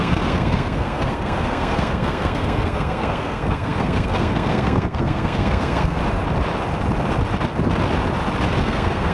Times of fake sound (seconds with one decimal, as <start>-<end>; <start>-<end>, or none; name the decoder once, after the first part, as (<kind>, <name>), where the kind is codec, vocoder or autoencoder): 0.0-6.0 (codec, SNAC); 8.6-9.1